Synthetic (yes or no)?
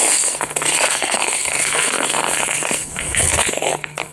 yes